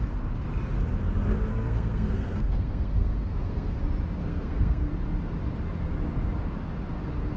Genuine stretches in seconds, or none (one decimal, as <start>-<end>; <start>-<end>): 0.0-1.5; 3.8-4.2; 4.9-7.4